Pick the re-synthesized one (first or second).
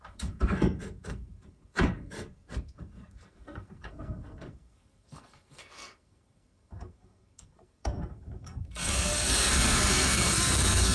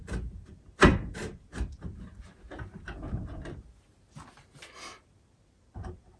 first